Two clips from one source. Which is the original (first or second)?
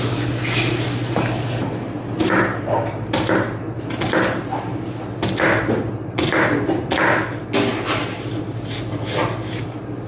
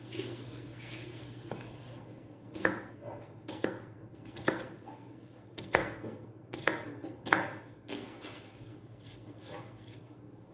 first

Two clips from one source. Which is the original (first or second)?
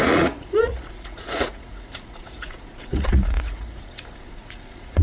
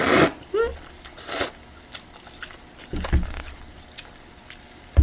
second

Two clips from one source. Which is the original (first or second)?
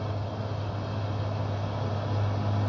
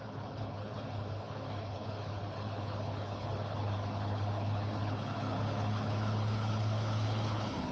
first